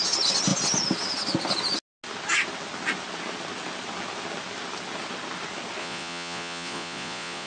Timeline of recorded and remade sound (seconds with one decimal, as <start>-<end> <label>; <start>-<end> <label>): 0.0-5.8 recorded; 5.8-7.5 remade